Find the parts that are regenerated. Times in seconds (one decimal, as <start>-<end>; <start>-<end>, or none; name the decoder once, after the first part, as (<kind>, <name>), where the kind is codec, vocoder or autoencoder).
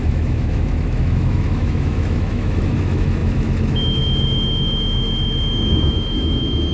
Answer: 0.0-6.7 (autoencoder, DAC-VAE)